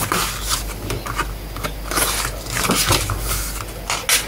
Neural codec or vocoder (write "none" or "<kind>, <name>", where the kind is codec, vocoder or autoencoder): none